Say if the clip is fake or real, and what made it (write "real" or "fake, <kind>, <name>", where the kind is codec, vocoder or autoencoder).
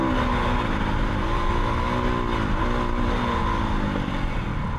real